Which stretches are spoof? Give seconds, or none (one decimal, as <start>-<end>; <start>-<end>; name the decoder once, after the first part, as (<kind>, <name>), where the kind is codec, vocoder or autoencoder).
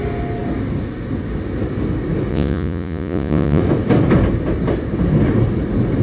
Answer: 2.3-3.6 (vocoder, Vocos)